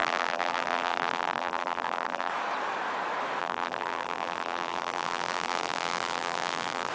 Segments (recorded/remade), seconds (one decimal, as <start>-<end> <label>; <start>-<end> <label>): 0.0-2.3 remade; 2.3-3.4 recorded; 3.4-6.9 remade